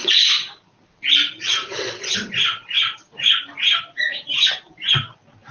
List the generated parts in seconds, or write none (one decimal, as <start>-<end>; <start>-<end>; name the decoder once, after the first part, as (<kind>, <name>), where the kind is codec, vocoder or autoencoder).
1.6-4.9 (vocoder, BigVGAN v2)